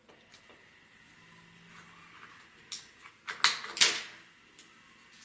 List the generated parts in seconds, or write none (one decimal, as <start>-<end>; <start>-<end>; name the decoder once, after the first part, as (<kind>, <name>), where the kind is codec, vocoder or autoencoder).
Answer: none

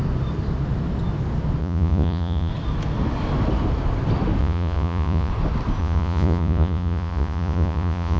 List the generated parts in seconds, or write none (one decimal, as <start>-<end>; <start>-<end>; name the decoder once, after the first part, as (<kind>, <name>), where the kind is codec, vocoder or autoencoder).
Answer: 1.6-2.5 (vocoder, Vocos); 4.4-5.3; 5.8-8.2

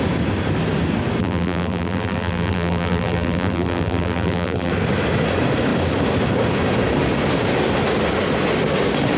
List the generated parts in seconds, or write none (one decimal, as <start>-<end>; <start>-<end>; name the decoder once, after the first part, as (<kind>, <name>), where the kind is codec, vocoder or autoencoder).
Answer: 1.2-4.7 (vocoder, BigVGAN v2)

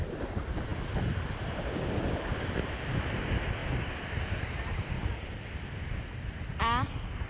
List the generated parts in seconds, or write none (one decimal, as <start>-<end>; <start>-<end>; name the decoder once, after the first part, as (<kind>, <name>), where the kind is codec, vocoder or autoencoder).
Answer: none

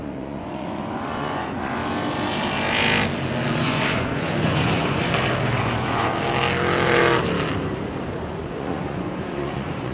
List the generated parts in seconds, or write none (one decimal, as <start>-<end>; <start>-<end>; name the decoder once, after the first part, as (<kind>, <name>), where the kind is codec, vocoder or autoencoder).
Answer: 0.0-1.8 (vocoder, Vocos); 3.6-5.0; 5.6-6.1; 8.2-9.9

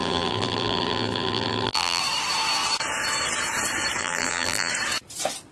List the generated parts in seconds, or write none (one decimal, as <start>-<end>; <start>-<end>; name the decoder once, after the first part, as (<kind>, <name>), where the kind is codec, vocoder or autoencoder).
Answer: 0.0-2.0 (vocoder, BigVGAN v2); 4.0-4.7

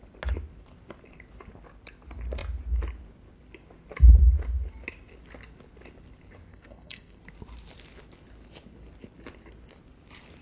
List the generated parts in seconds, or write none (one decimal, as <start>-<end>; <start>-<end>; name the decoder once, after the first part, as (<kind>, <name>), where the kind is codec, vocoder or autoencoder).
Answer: 6.5-7.2 (codec, SNAC)